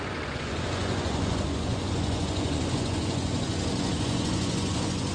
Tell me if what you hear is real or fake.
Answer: fake